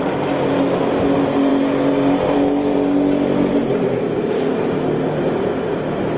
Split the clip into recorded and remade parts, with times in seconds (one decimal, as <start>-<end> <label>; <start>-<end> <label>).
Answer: 0.0-6.2 recorded